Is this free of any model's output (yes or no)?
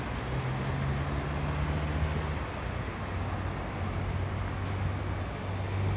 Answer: yes